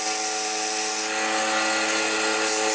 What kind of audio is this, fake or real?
real